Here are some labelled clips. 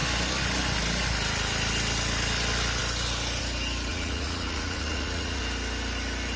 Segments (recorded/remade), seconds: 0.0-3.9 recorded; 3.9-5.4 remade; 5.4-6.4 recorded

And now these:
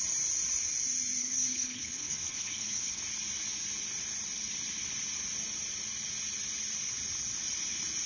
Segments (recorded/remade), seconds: 0.0-1.2 recorded; 1.2-3.0 remade; 3.0-8.1 recorded

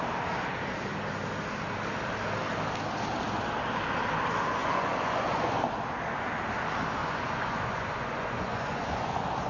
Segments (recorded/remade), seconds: 0.0-4.6 recorded; 4.6-5.6 remade; 5.6-7.0 recorded; 7.0-9.5 remade

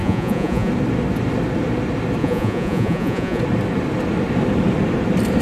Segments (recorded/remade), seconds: 0.0-0.7 remade; 0.7-2.2 recorded; 2.2-3.4 remade; 3.4-5.4 recorded

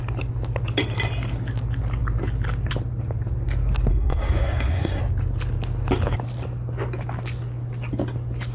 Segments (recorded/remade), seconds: 0.0-3.9 recorded; 3.9-5.0 remade; 5.0-8.5 recorded

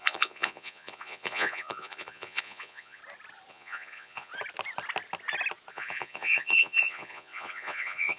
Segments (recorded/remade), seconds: 0.0-3.0 remade; 3.0-3.5 recorded; 3.5-4.3 remade; 4.3-5.7 recorded; 5.7-8.2 remade

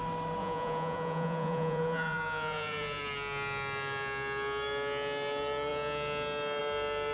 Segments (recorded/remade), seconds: 0.0-0.4 recorded; 0.4-3.0 remade; 3.0-7.1 recorded

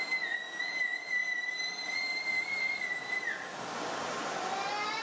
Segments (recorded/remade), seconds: 0.0-5.0 recorded